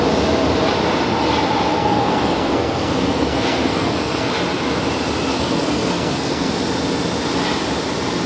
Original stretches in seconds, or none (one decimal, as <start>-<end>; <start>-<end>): 0.0-1.7; 4.3-5.3; 6.5-8.3